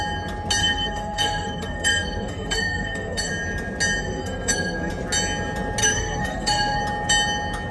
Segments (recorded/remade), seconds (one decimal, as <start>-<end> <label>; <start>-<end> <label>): 0.0-0.6 recorded; 0.6-3.3 remade; 3.3-4.0 recorded; 4.0-4.9 remade; 4.9-5.8 recorded; 5.8-6.8 remade; 6.8-7.7 recorded

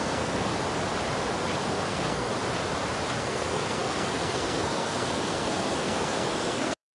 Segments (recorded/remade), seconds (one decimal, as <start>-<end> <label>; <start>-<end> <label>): 0.0-0.5 remade; 0.5-1.7 recorded; 1.7-2.3 remade; 2.3-3.2 recorded; 3.2-6.9 remade